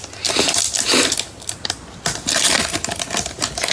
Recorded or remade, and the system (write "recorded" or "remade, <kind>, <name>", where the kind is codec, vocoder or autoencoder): recorded